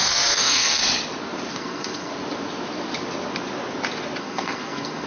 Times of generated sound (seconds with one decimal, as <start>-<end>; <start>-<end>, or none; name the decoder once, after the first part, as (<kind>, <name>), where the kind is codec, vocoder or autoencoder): 0.0-0.8 (codec, SNAC); 1.5-2.1; 4.2-5.1